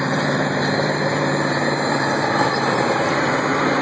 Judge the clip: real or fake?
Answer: fake